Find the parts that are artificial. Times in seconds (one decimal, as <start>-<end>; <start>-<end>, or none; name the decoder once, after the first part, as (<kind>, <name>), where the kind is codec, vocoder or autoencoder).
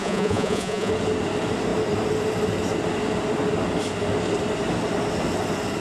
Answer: 0.0-0.9 (vocoder, Vocos)